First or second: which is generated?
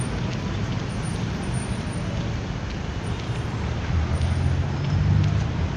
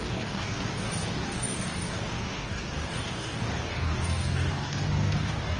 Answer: second